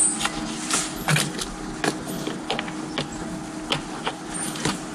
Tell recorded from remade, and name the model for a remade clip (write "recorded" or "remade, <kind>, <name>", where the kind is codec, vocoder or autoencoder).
recorded